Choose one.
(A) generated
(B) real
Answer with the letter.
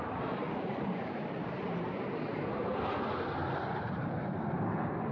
B